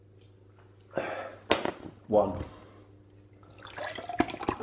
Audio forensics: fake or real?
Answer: real